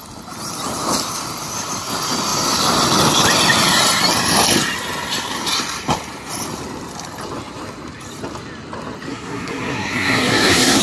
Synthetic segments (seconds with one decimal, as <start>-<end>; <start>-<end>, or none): 9.1-10.8